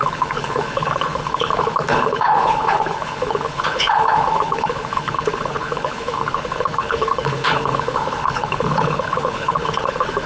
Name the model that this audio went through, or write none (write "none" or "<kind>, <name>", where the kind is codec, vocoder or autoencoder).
codec, HILCodec